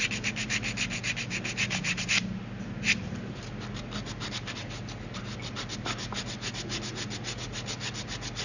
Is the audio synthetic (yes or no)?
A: no